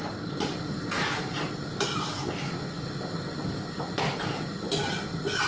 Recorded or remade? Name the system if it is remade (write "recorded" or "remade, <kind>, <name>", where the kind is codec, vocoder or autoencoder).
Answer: recorded